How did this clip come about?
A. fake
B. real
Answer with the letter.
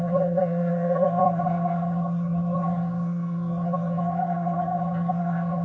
A